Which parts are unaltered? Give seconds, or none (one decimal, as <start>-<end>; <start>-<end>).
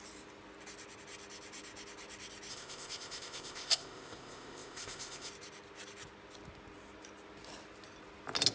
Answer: 0.0-2.5; 5.3-8.5